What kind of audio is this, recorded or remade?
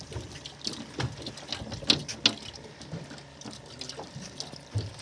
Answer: recorded